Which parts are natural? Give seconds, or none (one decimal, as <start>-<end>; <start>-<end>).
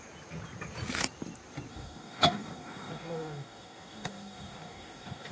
0.0-1.7